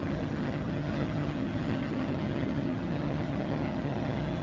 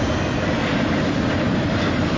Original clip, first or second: second